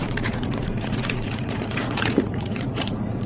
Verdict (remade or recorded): remade